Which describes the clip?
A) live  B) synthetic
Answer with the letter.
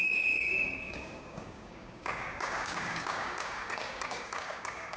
B